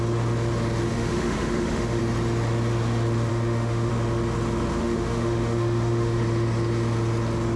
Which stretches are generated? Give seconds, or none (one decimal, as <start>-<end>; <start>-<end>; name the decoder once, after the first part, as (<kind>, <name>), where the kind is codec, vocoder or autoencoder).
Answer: 0.9-2.0 (autoencoder, DAC-VAE); 3.3-3.9; 4.8-6.2

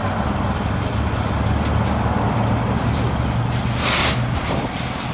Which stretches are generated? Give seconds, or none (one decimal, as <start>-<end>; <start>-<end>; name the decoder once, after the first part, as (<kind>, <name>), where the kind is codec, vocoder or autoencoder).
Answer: none